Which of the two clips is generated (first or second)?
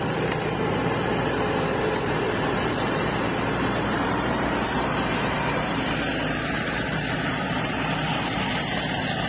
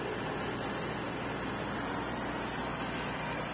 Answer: first